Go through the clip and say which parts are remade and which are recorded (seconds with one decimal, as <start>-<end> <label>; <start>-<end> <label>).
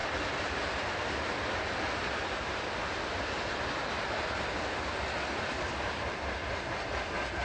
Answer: 0.0-7.4 recorded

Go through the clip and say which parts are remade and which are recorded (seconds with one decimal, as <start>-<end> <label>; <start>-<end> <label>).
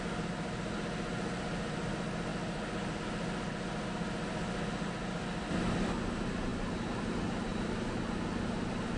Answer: 0.0-9.0 recorded